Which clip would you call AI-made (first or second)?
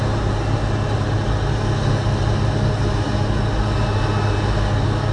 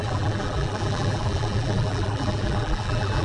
second